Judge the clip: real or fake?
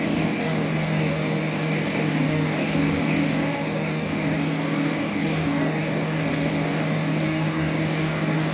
fake